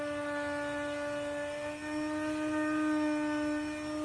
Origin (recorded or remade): recorded